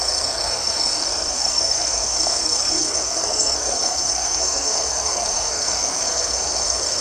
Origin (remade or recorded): remade